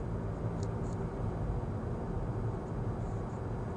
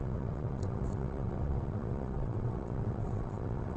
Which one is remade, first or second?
second